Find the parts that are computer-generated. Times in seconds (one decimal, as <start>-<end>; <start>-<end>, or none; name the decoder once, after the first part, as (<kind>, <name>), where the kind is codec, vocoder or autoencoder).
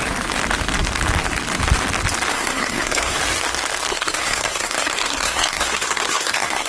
2.3-3.2 (codec, SNAC); 3.9-6.7